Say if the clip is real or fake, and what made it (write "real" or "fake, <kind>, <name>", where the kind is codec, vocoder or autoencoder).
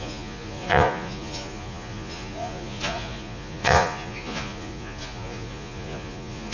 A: fake, vocoder, Vocos